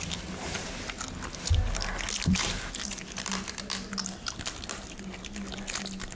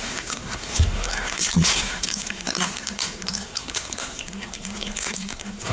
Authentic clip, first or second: first